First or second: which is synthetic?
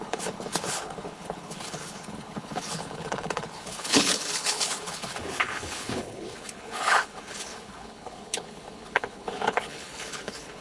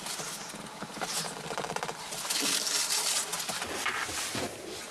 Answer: first